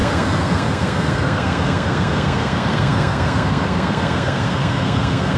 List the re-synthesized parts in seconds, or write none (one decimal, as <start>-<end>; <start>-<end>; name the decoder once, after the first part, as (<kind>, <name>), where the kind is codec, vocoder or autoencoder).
0.0-5.4 (codec, SNAC)